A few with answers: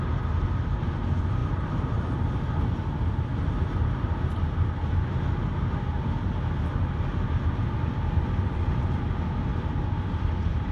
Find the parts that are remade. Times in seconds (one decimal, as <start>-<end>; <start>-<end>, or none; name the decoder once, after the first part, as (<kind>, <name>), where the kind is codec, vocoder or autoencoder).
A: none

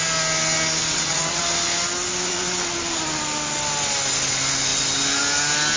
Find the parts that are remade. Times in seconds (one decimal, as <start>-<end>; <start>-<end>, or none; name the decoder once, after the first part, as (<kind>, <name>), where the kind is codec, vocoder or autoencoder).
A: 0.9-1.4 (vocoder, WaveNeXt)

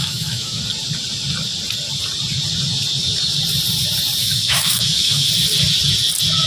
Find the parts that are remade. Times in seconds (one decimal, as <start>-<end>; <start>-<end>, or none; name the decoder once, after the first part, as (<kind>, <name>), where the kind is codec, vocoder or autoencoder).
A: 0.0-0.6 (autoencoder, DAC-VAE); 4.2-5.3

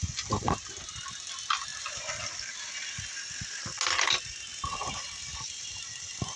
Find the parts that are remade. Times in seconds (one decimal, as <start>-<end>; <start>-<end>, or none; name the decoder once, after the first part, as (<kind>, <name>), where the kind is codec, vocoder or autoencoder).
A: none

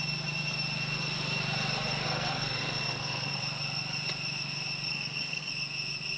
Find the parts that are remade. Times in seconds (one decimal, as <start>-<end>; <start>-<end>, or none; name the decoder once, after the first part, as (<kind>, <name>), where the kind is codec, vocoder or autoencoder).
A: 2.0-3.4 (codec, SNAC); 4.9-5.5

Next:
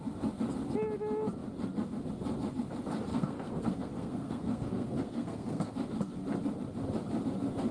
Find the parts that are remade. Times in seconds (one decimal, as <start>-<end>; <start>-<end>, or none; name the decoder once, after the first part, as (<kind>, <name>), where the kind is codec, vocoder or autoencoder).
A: 3.1-5.7 (codec, SNAC)

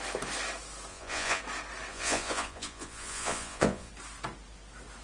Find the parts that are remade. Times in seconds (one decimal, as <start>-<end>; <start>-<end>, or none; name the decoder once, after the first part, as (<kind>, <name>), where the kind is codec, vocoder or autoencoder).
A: 0.9-1.4 (vocoder, Vocos); 1.9-3.9